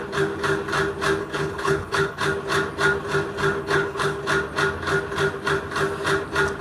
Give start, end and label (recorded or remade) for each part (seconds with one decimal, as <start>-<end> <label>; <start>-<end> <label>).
0.0-1.2 recorded; 1.2-2.2 remade; 2.2-3.6 recorded; 3.6-4.2 remade; 4.2-6.6 recorded